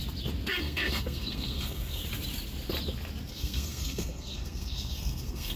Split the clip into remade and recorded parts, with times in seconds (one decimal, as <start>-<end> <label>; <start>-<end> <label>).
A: 0.0-0.6 recorded; 0.6-2.0 remade; 2.0-3.3 recorded; 3.3-5.6 remade